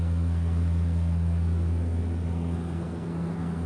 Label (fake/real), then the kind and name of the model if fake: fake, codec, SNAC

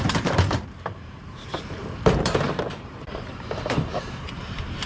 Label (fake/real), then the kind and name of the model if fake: fake, vocoder, BigVGAN v2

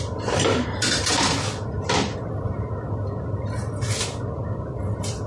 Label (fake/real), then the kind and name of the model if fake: real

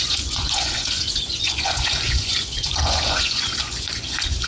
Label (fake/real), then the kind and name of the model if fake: fake, vocoder, Vocos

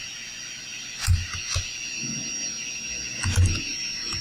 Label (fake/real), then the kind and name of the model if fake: real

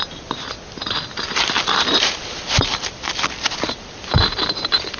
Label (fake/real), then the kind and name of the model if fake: fake, vocoder, BigVGAN v2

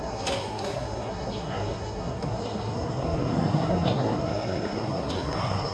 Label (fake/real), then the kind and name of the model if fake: fake, codec, SNAC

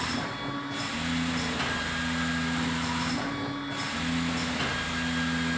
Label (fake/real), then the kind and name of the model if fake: real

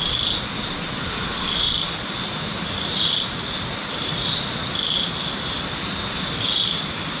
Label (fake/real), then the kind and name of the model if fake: real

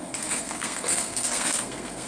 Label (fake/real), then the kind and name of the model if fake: fake, codec, SNAC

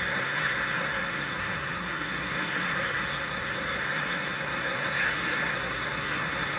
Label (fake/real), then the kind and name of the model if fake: fake, codec, SNAC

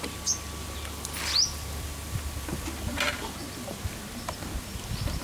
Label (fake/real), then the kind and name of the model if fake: real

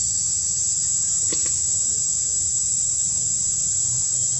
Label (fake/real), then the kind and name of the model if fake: real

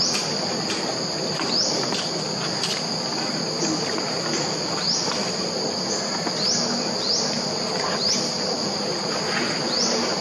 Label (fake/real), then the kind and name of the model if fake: real